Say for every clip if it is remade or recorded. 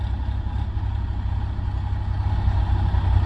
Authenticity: recorded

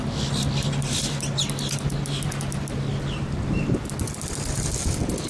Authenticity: recorded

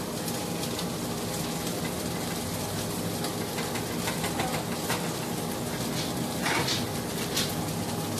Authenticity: recorded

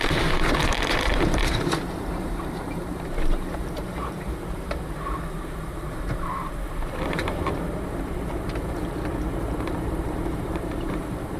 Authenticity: remade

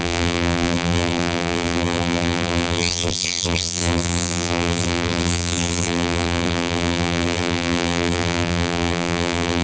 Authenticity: remade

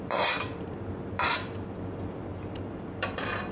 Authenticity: remade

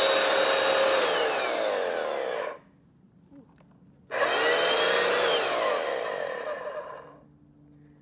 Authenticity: recorded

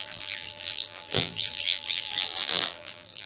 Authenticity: remade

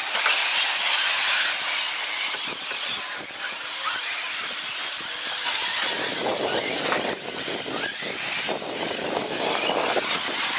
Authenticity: recorded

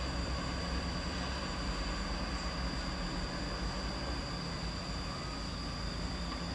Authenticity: recorded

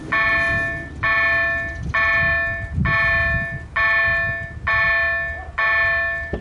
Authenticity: recorded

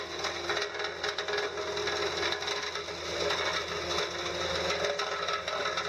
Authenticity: recorded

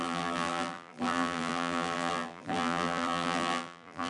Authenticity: remade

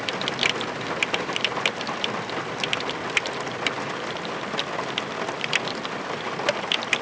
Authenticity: recorded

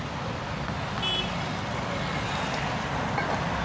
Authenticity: remade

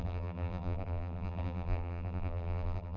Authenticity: remade